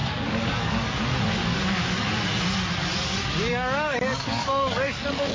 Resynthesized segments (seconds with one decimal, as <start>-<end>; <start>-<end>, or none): 0.0-1.0; 1.4-2.1; 3.5-5.3